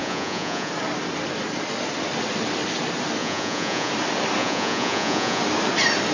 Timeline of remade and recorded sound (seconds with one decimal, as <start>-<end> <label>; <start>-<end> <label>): 0.0-0.7 remade; 0.7-3.2 recorded; 3.2-3.9 remade; 3.9-4.4 recorded; 4.4-5.4 remade; 5.4-6.1 recorded